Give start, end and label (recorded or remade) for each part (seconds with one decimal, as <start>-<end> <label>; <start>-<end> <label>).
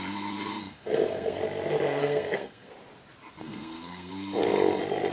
0.0-0.6 recorded; 0.6-1.4 remade; 1.4-2.0 recorded; 2.0-2.7 remade; 2.7-3.4 recorded; 3.4-4.1 remade; 4.1-5.1 recorded